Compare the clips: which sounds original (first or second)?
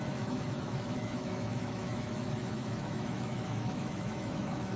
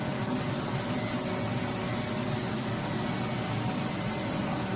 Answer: second